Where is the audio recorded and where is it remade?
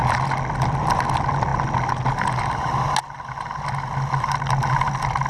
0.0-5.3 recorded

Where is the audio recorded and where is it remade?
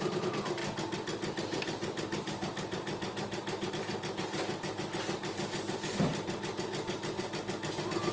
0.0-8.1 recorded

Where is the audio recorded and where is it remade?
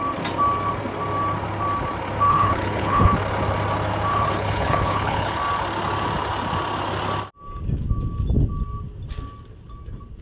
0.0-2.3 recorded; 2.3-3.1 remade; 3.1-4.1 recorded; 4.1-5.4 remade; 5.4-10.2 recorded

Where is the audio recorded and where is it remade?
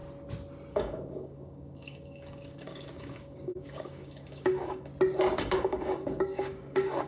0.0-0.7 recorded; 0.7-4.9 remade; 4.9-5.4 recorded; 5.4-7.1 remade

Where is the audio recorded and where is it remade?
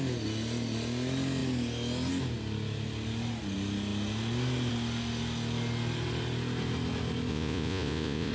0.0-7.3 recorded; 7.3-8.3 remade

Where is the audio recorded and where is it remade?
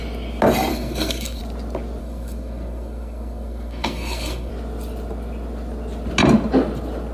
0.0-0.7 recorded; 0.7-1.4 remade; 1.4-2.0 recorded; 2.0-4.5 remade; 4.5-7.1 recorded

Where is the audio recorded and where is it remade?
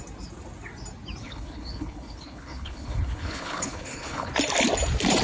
0.0-1.2 recorded; 1.2-4.3 remade; 4.3-5.2 recorded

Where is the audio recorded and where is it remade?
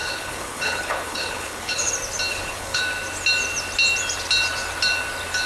0.0-1.9 remade; 1.9-2.3 recorded; 2.3-2.8 remade; 2.8-5.5 recorded